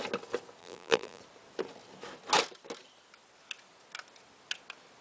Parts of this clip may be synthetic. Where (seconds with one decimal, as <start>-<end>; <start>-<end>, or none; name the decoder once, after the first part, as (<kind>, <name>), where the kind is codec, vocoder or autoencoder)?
0.6-1.2 (vocoder, BigVGAN v2)